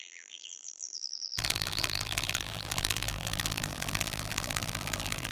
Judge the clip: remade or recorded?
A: remade